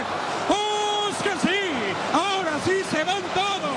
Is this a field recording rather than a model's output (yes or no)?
yes